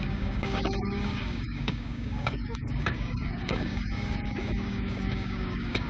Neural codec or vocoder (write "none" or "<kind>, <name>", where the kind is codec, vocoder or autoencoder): codec, DAC